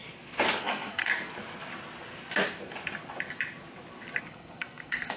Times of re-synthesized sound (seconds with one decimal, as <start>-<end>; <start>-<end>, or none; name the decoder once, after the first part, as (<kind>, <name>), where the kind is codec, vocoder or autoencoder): 0.6-1.1 (codec, SNAC); 4.2-5.2